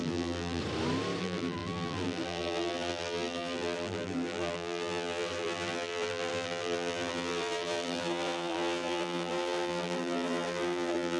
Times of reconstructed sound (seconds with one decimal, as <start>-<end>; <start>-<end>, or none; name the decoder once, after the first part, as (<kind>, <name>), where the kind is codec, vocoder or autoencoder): 0.0-0.6 (vocoder, BigVGAN v2); 1.2-11.2